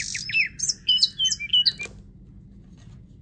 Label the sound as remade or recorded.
recorded